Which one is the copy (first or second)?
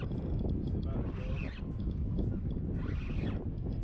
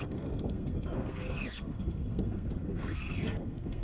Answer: second